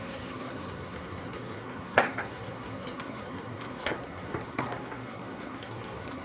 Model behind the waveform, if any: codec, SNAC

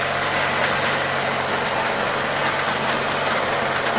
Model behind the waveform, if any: none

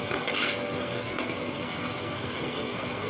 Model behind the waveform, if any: codec, SNAC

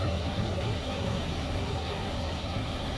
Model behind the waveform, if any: codec, SNAC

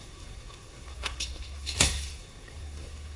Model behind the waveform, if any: codec, SNAC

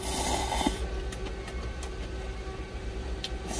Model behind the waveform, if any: none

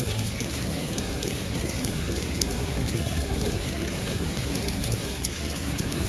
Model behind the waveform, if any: codec, SNAC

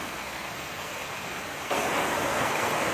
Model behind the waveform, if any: codec, SNAC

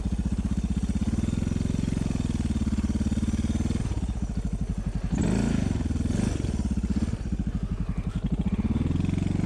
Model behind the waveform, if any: none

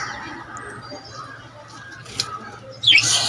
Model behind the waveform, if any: none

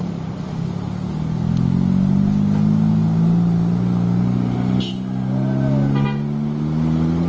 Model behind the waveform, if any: none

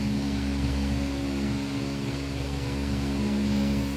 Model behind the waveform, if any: codec, SNAC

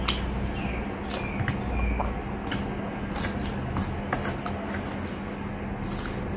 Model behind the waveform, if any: none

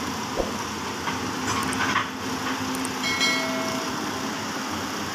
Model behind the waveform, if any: none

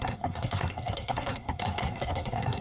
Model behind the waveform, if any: codec, SNAC